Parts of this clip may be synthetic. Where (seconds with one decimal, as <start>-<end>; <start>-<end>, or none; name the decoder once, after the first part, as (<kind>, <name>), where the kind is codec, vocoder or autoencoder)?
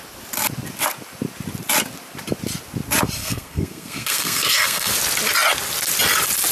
3.2-4.9 (codec, SNAC)